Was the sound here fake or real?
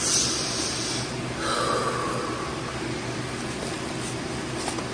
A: real